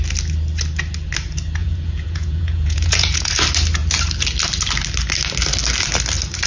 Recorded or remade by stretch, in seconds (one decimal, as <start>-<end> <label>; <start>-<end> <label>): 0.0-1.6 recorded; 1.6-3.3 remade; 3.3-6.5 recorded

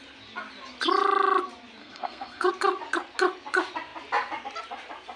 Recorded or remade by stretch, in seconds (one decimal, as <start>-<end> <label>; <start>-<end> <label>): 0.0-1.8 recorded; 1.8-2.5 remade; 2.5-5.2 recorded

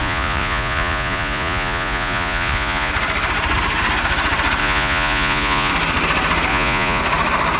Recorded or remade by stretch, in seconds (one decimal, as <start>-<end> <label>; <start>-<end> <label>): 0.0-2.9 remade; 2.9-4.6 recorded; 4.6-5.7 remade; 5.7-6.5 recorded; 6.5-7.0 remade; 7.0-7.6 recorded

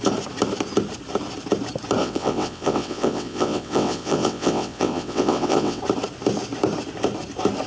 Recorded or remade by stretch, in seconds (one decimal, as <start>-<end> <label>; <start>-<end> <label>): 0.0-2.0 recorded; 2.0-5.8 remade; 5.8-7.7 recorded

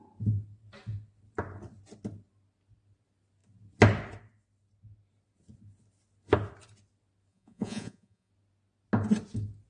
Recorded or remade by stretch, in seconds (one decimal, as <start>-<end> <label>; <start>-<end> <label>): 0.0-7.3 recorded; 7.3-8.3 remade; 8.3-9.7 recorded

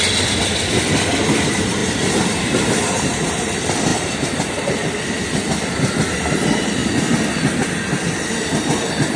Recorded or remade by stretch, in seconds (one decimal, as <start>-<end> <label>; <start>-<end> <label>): 0.0-1.8 recorded; 1.8-3.4 remade; 3.4-9.2 recorded

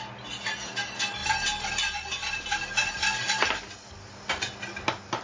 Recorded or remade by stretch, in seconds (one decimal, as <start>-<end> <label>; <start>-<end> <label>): 0.0-5.2 recorded